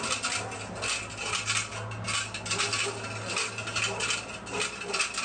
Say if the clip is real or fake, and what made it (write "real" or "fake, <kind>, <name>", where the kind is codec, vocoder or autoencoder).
real